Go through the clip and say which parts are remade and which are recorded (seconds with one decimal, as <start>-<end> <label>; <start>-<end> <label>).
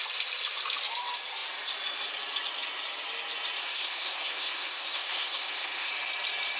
0.0-3.6 recorded; 3.6-5.9 remade; 5.9-6.6 recorded